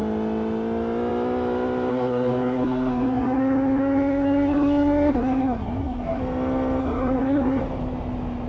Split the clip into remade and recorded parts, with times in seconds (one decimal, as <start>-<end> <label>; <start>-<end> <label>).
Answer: 0.0-1.9 recorded; 1.9-6.2 remade; 6.2-6.8 recorded; 6.8-7.6 remade; 7.6-8.5 recorded

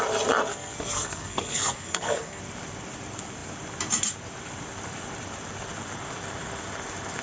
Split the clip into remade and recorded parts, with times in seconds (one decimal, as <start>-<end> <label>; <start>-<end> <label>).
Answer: 0.0-0.5 recorded; 0.5-2.4 remade; 2.4-7.2 recorded

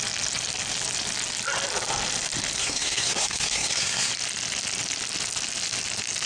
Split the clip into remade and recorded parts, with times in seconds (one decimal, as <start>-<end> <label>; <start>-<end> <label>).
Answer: 0.0-2.6 recorded; 2.6-4.1 remade; 4.1-6.3 recorded

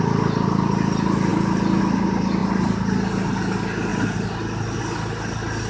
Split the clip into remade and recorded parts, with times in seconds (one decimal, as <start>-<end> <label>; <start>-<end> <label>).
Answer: 0.0-5.7 recorded

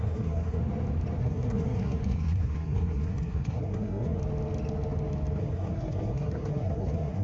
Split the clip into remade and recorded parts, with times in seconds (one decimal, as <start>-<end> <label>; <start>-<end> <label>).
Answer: 0.0-0.6 remade; 0.6-1.2 recorded; 1.2-4.2 remade; 4.2-5.4 recorded; 5.4-7.2 remade

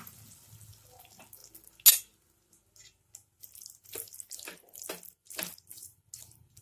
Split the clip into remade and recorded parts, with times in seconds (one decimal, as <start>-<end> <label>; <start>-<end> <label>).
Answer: 0.0-6.6 recorded

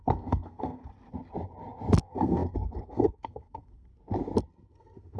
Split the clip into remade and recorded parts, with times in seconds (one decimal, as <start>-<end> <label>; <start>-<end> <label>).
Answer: 0.0-0.9 remade; 0.9-2.0 recorded; 2.0-3.9 remade; 3.9-4.7 recorded; 4.7-5.2 remade